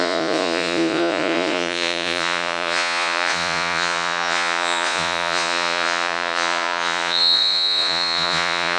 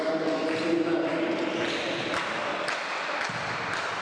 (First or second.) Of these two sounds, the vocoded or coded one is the first